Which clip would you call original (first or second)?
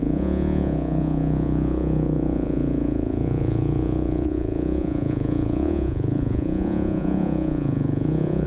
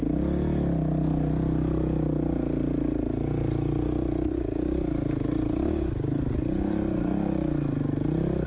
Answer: second